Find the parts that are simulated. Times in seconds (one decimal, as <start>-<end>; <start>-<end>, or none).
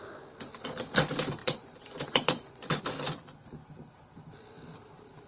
1.4-2.8